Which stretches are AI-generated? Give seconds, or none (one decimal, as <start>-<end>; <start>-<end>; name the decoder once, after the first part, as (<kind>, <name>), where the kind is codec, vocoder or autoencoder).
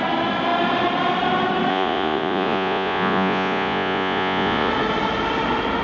1.7-4.7 (vocoder, Vocos)